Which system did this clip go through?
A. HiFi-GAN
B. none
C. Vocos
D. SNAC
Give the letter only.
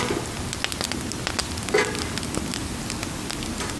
B